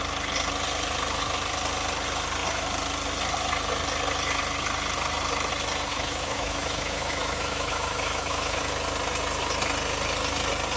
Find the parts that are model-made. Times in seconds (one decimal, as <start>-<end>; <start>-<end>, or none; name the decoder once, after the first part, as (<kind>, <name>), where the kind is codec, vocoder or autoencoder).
5.9-8.6 (autoencoder, DAC-VAE)